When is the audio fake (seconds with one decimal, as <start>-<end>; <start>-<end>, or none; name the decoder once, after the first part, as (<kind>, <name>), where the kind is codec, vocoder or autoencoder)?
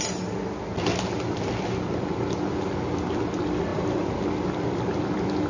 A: none